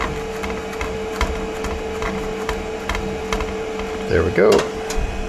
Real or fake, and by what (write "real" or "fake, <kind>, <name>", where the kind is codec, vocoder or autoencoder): real